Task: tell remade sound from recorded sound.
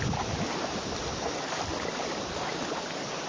recorded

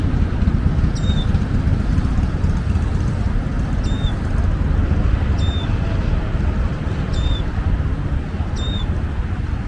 recorded